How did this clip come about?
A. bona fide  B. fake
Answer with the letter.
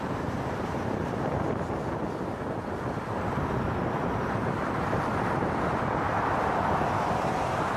A